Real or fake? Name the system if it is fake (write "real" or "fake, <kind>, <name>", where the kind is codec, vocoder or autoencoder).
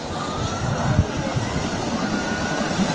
real